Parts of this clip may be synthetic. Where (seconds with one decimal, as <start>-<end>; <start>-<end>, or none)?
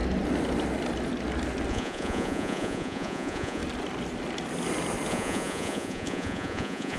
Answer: 1.7-3.6; 5.1-7.0